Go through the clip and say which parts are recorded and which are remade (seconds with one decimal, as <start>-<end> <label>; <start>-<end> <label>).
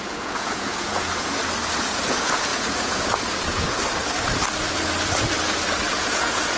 0.0-1.4 remade; 1.4-2.0 recorded; 2.0-3.8 remade; 3.8-5.9 recorded; 5.9-6.6 remade